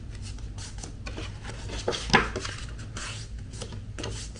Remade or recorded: recorded